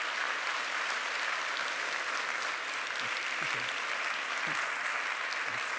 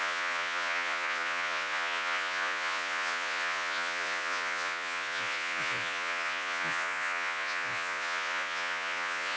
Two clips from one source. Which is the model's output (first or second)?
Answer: second